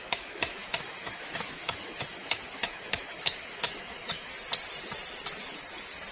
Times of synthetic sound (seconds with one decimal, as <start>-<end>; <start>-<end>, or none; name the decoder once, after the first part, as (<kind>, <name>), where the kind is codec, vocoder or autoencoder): 0.0-4.3 (autoencoder, DAC-VAE)